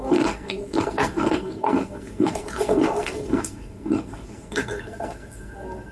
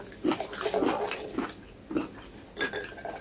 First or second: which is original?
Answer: second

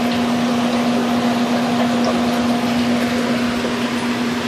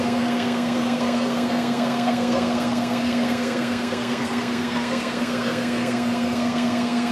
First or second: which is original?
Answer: first